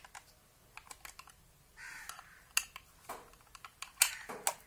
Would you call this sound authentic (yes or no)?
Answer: yes